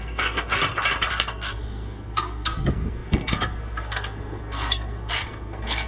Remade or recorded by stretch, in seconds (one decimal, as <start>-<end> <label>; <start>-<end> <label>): 0.0-0.6 remade; 0.6-1.1 recorded; 1.1-5.9 remade